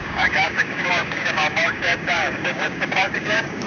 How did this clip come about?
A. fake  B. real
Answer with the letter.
A